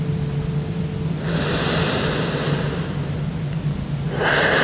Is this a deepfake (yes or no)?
no